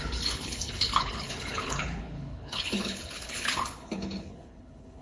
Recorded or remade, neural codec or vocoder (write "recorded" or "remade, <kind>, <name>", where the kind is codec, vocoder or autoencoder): remade, codec, HILCodec